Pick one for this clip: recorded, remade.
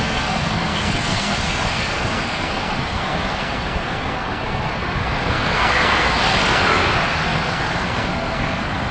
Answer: remade